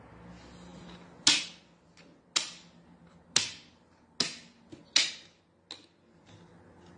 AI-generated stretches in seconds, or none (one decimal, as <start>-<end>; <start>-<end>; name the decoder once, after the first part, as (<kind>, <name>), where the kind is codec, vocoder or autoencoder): none